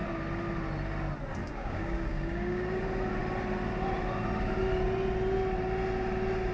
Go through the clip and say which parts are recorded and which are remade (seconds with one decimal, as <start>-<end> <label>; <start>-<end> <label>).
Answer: 0.0-1.4 recorded; 1.4-2.8 remade; 2.8-6.5 recorded